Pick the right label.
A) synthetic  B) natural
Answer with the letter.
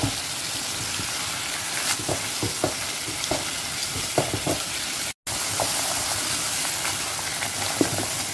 B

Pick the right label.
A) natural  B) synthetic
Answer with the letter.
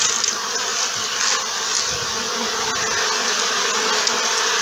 A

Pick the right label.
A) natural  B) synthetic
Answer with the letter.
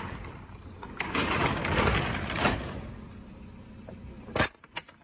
A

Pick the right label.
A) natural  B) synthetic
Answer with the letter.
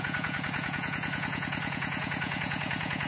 B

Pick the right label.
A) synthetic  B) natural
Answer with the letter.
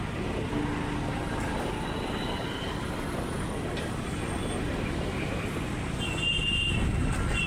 B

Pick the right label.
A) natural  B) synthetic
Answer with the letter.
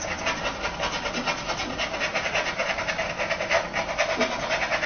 A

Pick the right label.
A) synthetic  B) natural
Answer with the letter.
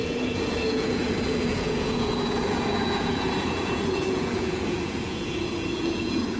A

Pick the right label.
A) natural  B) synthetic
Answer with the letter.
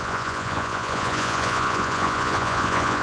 B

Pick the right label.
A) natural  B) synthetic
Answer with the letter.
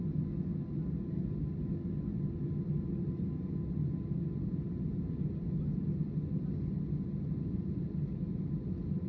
A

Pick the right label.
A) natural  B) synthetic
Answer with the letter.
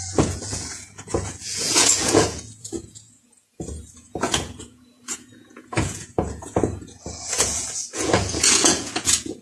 B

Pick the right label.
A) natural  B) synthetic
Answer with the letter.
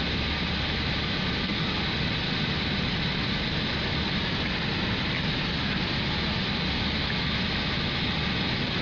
A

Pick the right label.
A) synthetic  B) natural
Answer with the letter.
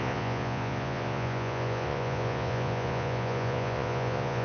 A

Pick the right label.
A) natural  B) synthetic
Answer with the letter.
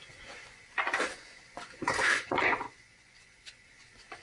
B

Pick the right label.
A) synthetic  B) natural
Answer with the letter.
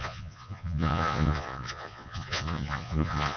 A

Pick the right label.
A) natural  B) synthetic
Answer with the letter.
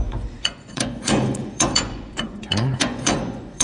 B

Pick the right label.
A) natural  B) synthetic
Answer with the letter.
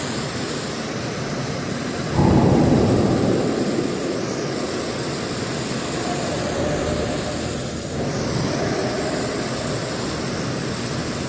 A